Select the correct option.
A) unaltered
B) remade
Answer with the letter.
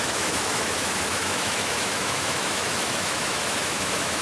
B